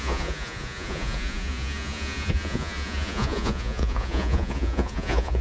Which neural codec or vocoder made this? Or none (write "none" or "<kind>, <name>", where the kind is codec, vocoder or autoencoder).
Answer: vocoder, Vocos